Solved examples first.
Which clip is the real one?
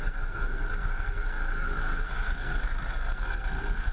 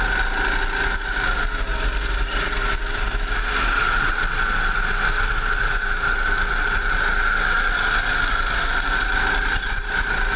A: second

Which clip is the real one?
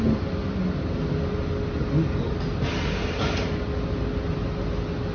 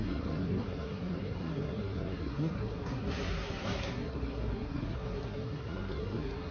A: first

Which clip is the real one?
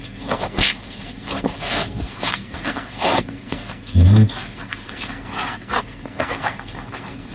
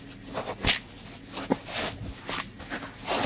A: second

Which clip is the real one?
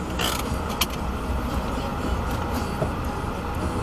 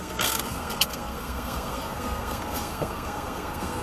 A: first